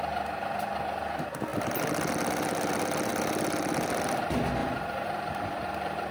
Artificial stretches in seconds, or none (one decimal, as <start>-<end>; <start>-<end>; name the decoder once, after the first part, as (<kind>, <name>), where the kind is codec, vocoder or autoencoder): 4.6-6.1 (vocoder, BigVGAN v2)